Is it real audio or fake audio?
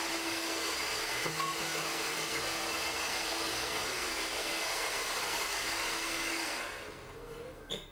fake